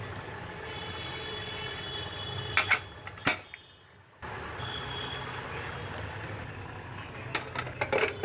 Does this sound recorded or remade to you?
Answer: recorded